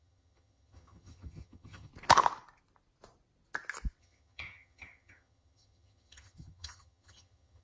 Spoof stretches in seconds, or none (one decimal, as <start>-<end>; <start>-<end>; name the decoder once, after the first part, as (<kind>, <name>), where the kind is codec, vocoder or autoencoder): 0.0-1.9 (vocoder, HiFi-GAN); 4.0-7.6